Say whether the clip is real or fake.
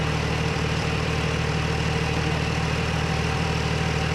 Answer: fake